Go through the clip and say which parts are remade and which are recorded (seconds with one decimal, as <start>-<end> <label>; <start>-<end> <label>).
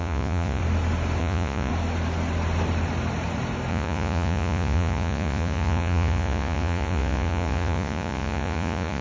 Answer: 0.0-0.6 remade; 0.6-1.2 recorded; 1.2-1.7 remade; 1.7-3.7 recorded; 3.7-9.0 remade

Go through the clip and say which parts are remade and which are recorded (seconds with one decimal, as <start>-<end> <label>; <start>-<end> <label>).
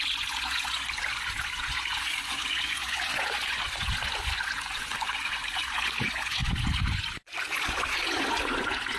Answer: 0.0-9.0 remade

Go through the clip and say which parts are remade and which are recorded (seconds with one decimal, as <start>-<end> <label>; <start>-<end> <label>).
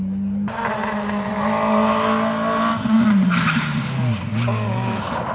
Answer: 0.0-5.3 recorded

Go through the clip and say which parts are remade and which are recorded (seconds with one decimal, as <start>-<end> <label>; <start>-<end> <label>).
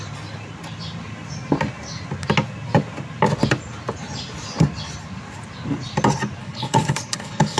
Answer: 0.0-6.4 recorded; 6.4-7.6 remade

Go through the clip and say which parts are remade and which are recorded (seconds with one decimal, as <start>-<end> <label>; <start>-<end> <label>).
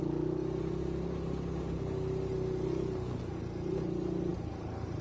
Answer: 0.0-5.0 recorded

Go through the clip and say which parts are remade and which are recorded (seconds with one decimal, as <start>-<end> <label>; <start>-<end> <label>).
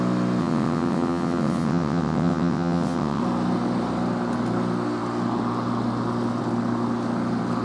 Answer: 0.0-0.4 recorded; 0.4-3.2 remade; 3.2-7.6 recorded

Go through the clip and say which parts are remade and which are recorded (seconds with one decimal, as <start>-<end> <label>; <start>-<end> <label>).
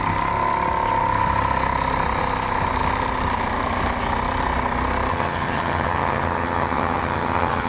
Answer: 0.0-5.1 recorded; 5.1-7.7 remade